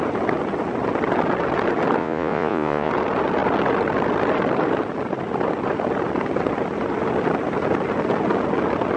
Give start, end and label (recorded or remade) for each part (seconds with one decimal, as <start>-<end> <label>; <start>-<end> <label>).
0.0-2.0 recorded; 2.0-2.9 remade; 2.9-9.0 recorded